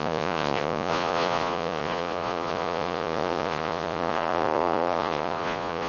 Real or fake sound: fake